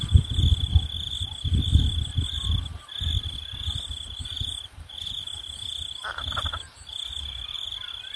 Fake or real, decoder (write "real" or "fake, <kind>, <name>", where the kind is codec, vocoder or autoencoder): real